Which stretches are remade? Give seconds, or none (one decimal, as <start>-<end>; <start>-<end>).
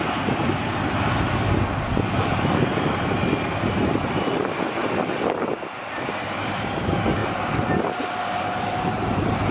none